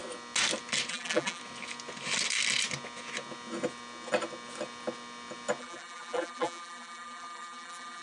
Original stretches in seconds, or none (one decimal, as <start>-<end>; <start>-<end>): 0.0-0.9; 1.4-5.6